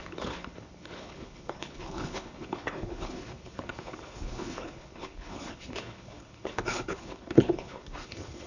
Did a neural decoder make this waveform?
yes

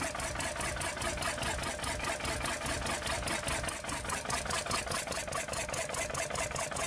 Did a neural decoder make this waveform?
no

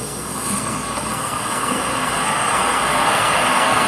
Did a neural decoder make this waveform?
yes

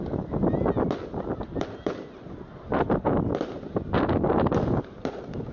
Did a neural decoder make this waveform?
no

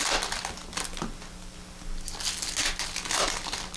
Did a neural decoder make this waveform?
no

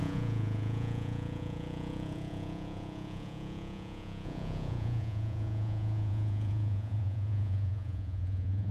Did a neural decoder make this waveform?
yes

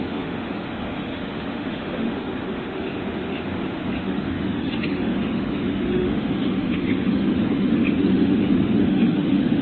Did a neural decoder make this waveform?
yes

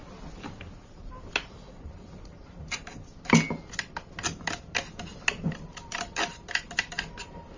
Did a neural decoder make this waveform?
no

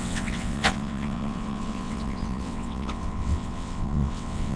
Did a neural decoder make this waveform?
yes